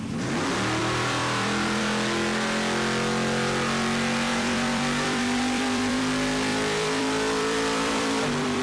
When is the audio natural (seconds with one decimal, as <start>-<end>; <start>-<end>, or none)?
0.0-0.8; 1.8-4.3; 6.0-6.5